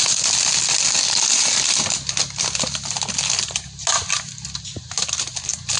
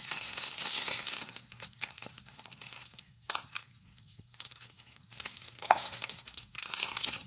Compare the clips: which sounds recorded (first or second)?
first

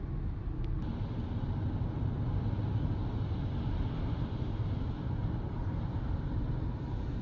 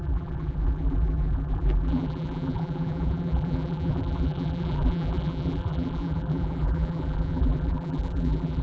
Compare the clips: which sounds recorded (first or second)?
first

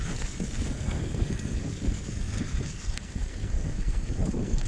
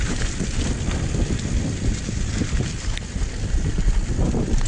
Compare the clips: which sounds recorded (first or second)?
second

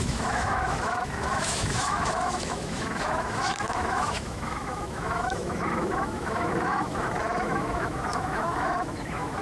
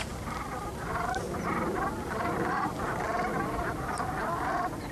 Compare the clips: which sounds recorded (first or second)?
second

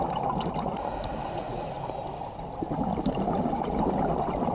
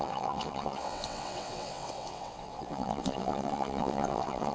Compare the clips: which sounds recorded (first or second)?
first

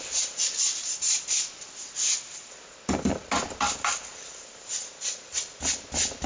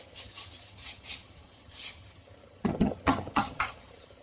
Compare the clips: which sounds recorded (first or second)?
first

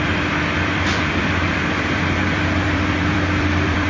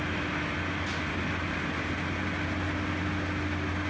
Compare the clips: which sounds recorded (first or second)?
second